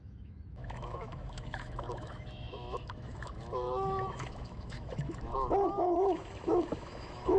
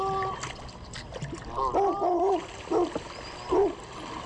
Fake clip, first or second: first